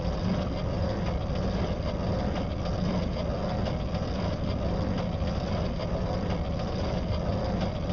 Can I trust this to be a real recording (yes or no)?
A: yes